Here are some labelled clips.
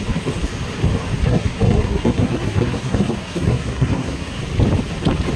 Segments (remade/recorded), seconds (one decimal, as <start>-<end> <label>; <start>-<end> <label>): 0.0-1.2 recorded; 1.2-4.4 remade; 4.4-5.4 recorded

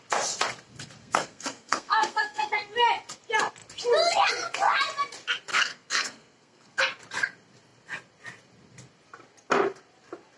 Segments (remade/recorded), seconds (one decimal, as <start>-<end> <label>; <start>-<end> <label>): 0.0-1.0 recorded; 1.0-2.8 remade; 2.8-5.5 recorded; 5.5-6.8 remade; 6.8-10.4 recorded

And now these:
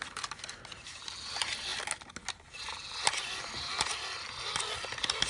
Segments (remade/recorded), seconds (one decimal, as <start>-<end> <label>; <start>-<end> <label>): 0.0-5.3 recorded